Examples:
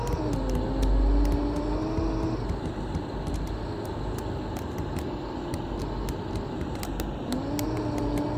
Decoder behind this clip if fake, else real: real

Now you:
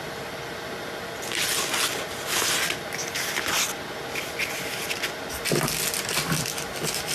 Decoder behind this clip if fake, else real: real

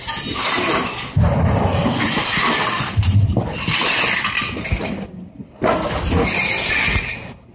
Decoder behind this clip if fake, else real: real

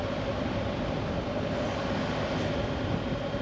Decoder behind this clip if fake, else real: real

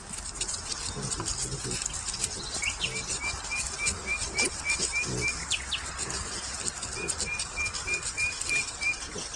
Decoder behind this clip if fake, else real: real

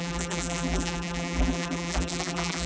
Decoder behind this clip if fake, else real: fake, vocoder, BigVGAN v2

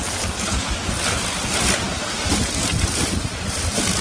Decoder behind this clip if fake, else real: real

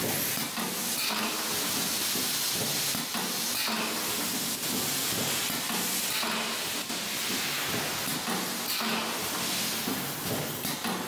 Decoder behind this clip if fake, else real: real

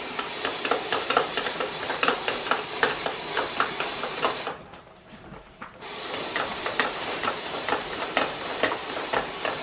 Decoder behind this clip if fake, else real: fake, vocoder, BigVGAN v2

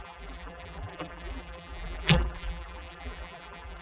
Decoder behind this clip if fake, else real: fake, vocoder, BigVGAN v2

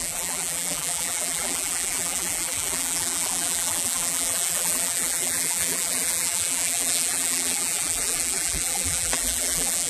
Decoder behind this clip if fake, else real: fake, vocoder, BigVGAN v2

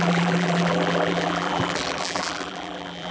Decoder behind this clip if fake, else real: fake, vocoder, BigVGAN v2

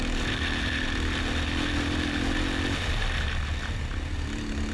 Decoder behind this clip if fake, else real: real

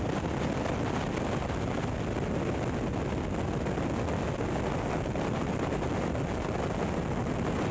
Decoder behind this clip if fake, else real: real